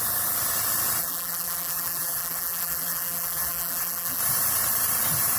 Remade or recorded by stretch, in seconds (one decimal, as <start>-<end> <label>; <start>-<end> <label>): 0.0-1.0 recorded; 1.0-4.2 remade; 4.2-5.4 recorded